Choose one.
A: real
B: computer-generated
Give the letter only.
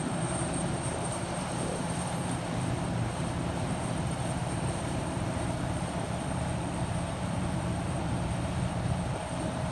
B